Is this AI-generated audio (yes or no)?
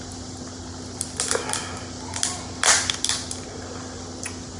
no